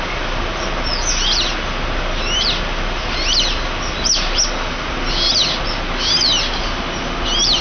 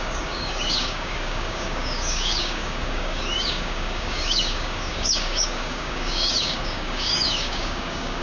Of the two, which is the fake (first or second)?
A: second